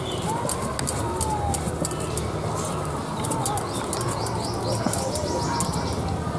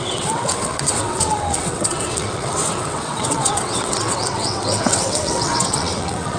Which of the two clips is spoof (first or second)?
second